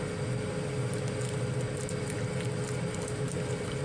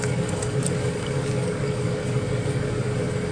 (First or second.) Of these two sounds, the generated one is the second